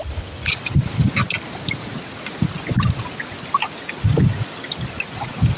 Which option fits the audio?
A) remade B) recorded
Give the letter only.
B